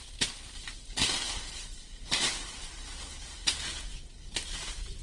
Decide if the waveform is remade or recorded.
recorded